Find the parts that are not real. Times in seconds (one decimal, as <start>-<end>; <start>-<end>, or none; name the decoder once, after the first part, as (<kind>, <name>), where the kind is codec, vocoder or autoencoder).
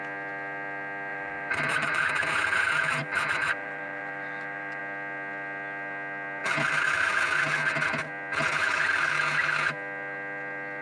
1.1-2.0 (vocoder, BigVGAN v2); 3.0-4.8